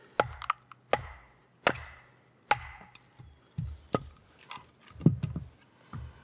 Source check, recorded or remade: recorded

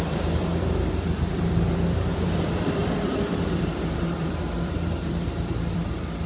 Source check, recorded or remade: remade